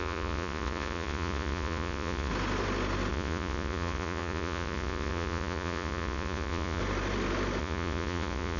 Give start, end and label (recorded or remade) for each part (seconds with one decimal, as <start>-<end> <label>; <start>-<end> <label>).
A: 0.0-2.3 remade; 2.3-3.1 recorded; 3.1-6.8 remade; 6.8-7.6 recorded; 7.6-8.6 remade

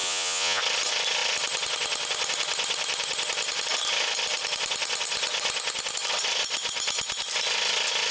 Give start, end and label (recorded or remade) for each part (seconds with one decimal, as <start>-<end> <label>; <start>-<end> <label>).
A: 0.0-0.6 remade; 0.6-8.1 recorded

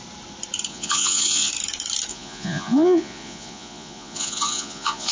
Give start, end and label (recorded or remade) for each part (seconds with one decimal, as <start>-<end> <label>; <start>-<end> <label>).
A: 0.0-0.7 recorded; 0.7-1.5 remade; 1.5-2.1 recorded; 2.1-5.1 remade

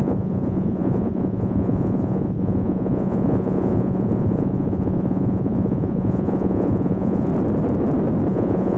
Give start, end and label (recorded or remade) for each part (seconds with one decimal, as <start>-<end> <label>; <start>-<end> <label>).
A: 0.0-7.3 remade; 7.3-8.3 recorded; 8.3-8.8 remade

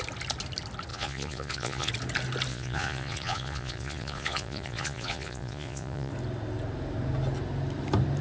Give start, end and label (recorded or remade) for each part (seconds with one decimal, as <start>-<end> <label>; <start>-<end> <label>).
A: 0.0-0.9 recorded; 0.9-1.9 remade; 1.9-2.5 recorded; 2.5-6.1 remade; 6.1-8.2 recorded

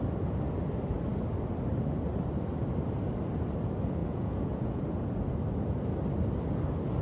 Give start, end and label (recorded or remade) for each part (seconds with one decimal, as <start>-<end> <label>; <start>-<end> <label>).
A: 0.0-4.0 recorded; 4.0-4.8 remade; 4.8-7.0 recorded

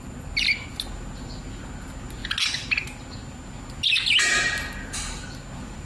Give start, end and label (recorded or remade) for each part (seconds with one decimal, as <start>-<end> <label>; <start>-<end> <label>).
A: 0.0-5.8 recorded

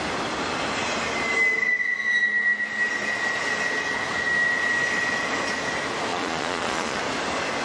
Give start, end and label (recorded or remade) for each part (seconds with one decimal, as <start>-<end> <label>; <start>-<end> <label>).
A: 0.0-6.1 recorded; 6.1-7.0 remade; 7.0-7.6 recorded